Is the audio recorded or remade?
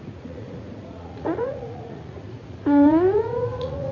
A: remade